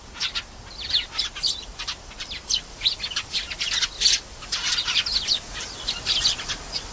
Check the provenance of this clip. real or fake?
fake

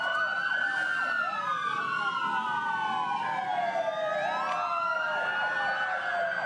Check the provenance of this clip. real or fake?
real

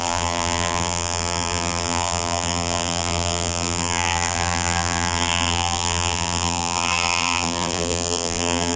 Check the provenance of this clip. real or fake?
fake